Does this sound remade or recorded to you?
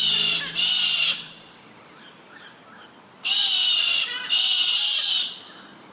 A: remade